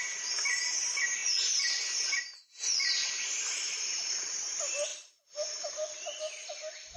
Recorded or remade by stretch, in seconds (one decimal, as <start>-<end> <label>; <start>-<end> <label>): 0.0-7.0 recorded